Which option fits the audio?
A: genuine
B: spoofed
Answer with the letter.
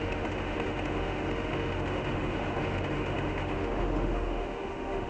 B